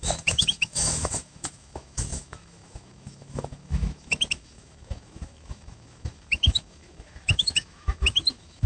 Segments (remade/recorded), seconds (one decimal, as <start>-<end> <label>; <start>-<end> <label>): 0.0-8.7 remade